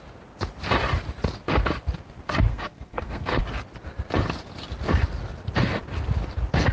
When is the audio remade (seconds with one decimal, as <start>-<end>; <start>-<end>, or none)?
2.5-3.4